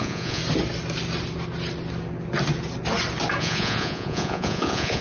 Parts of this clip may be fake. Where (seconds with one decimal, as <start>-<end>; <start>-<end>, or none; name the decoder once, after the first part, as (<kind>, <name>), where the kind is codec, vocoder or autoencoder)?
0.0-0.4 (vocoder, Vocos); 3.4-5.0